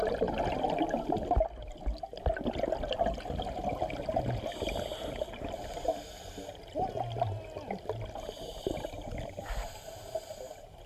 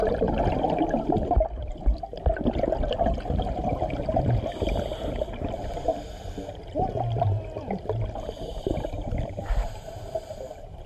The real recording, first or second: first